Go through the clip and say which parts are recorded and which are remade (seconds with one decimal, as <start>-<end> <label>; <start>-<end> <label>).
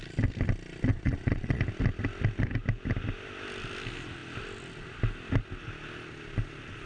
0.0-0.9 recorded; 0.9-1.6 remade; 1.6-6.9 recorded